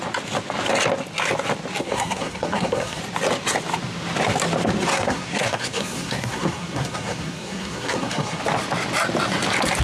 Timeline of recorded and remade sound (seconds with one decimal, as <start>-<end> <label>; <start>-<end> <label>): 0.0-1.8 recorded; 1.8-3.0 remade; 3.0-4.9 recorded; 4.9-8.4 remade; 8.4-9.8 recorded